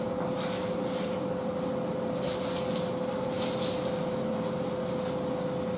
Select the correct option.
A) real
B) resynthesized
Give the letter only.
A